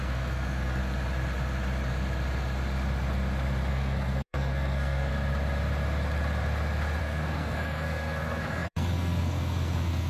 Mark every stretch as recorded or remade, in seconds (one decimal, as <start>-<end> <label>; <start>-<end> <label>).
0.0-0.8 remade; 0.8-3.7 recorded; 3.7-5.1 remade; 5.1-7.0 recorded; 7.0-10.1 remade